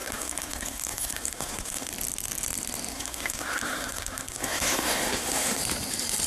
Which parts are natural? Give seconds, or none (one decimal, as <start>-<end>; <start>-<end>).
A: 1.9-2.9; 5.6-6.3